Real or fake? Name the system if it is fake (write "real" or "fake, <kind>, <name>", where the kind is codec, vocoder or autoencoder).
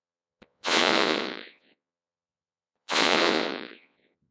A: fake, vocoder, Vocos